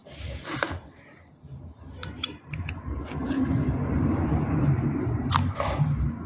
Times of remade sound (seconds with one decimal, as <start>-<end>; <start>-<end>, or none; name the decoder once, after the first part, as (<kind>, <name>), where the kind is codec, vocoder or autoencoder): 0.0-1.0 (vocoder, BigVGAN v2); 2.0-5.8